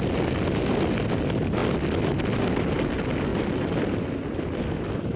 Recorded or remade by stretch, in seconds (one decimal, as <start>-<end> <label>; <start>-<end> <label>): 0.0-3.3 recorded; 3.3-5.2 remade